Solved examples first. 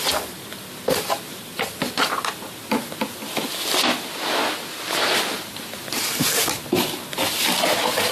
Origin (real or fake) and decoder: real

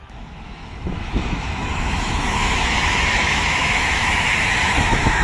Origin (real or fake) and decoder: fake, autoencoder, DAC-VAE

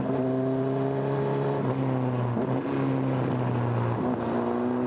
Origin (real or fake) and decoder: real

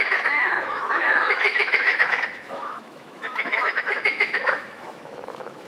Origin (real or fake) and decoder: fake, autoencoder, DAC-VAE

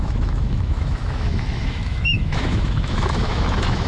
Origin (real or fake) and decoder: fake, autoencoder, DAC-VAE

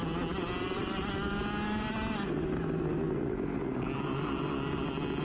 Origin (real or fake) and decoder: real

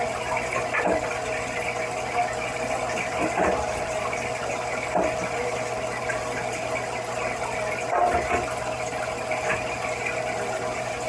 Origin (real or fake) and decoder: real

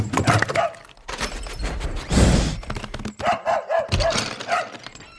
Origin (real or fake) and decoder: real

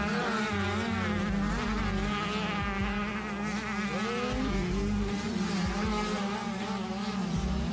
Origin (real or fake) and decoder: real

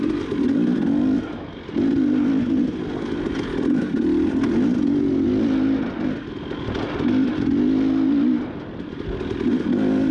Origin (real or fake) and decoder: real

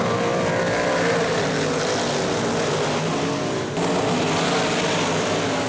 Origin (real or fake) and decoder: real